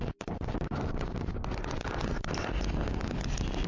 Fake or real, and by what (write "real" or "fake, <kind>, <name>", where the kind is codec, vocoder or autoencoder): real